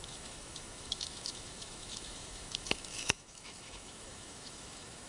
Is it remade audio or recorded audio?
remade